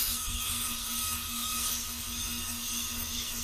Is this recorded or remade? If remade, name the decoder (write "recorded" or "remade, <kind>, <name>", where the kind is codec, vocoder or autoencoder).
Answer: remade, codec, SNAC